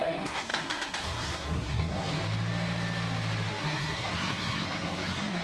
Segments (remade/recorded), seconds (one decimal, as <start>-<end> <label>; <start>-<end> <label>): 0.0-2.1 remade; 2.1-3.5 recorded; 3.5-5.4 remade